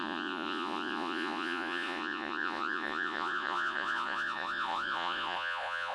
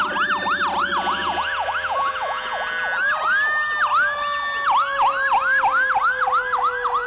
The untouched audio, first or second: second